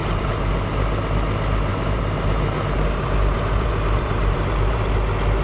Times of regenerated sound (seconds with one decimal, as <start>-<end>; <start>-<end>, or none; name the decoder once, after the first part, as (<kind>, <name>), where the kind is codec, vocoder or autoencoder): 0.0-0.5 (vocoder, BigVGAN v2); 1.7-4.9